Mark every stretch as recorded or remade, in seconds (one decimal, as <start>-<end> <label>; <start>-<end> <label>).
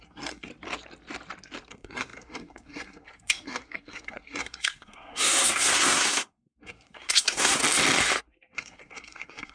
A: 0.0-0.5 remade; 0.5-1.7 recorded; 1.7-7.6 remade; 7.6-8.2 recorded; 8.2-9.5 remade